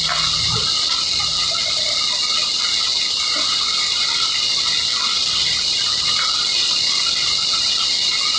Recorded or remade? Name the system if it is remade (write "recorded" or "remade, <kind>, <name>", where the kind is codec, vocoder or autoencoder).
recorded